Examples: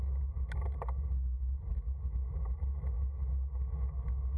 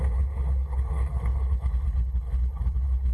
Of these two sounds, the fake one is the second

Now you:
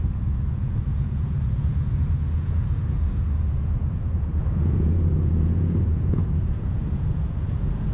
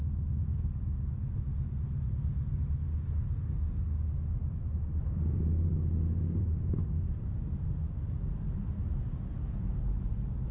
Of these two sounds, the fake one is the first